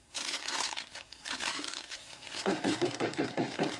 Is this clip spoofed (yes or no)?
yes